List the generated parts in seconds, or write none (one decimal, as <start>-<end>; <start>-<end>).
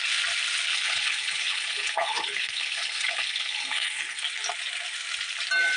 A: 0.7-4.2